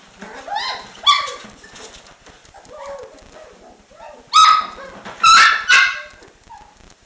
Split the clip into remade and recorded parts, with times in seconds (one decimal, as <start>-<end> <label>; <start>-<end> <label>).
0.0-7.1 recorded